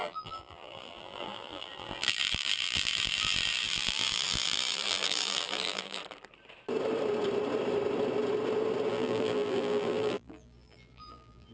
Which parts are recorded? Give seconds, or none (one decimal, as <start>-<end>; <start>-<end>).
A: 6.0-8.9